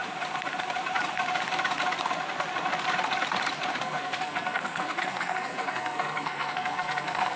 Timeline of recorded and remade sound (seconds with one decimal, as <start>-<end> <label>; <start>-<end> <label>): 0.0-3.8 recorded; 3.8-7.4 remade